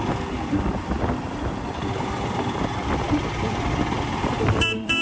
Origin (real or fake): fake